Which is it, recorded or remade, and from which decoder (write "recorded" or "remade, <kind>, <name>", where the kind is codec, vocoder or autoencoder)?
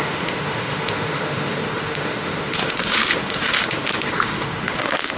remade, autoencoder, DAC-VAE